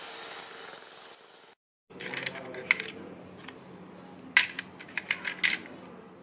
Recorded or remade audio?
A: recorded